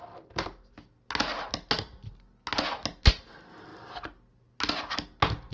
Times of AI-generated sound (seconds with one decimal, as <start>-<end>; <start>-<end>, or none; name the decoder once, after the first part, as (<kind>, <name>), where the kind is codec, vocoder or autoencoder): none